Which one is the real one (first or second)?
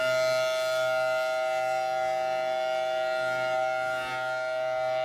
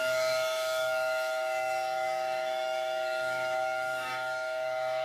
first